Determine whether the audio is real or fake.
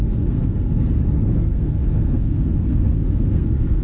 fake